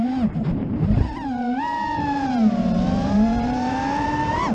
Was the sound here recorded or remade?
remade